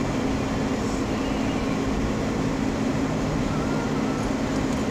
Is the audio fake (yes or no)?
no